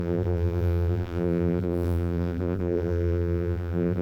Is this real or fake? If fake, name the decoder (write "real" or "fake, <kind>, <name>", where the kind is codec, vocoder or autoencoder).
fake, vocoder, BigVGAN v2